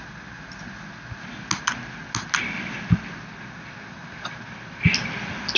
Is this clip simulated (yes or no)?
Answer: no